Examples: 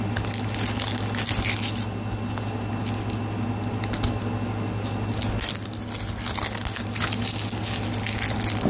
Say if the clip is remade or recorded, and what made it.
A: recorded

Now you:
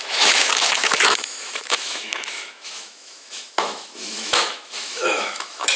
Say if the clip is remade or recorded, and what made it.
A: remade, autoencoder, DAC-VAE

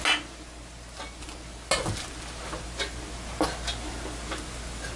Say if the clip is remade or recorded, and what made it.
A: recorded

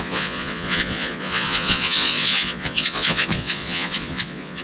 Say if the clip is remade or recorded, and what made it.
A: remade, vocoder, Vocos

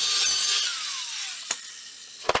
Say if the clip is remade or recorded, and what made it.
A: recorded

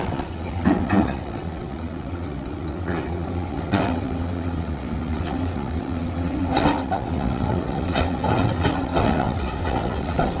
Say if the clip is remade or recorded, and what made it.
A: remade, vocoder, WaveNeXt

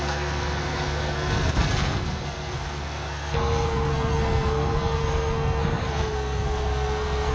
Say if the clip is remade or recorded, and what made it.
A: remade, codec, SNAC